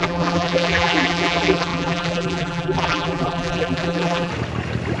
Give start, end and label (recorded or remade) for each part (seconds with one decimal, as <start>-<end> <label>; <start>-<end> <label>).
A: 0.0-4.3 remade; 4.3-5.0 recorded